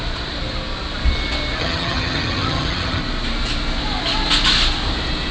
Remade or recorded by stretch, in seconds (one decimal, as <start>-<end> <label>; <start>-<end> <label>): 0.0-1.6 recorded; 1.6-3.0 remade; 3.0-5.3 recorded